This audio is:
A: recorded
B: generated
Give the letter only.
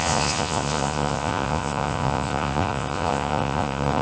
B